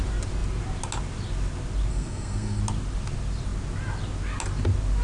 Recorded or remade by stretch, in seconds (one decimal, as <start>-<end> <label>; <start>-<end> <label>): 0.0-1.9 recorded; 1.9-2.6 remade; 2.6-5.0 recorded